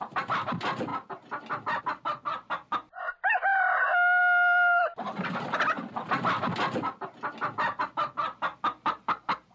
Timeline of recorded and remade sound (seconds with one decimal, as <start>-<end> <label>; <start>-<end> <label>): 0.0-9.5 recorded